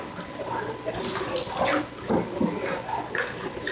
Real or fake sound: real